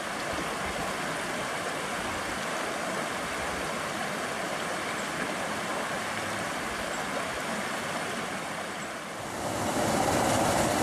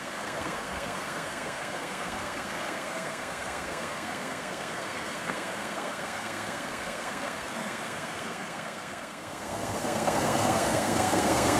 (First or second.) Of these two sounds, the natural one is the first